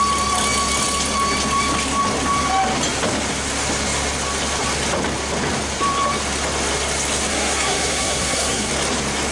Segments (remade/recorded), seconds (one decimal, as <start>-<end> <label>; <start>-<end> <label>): 0.0-7.3 recorded; 7.3-8.7 remade; 8.7-9.3 recorded